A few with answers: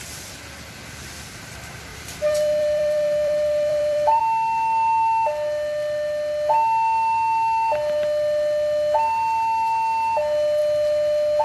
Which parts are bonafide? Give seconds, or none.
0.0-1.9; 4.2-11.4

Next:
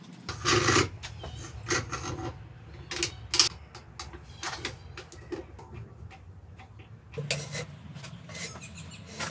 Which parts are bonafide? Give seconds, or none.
0.0-9.3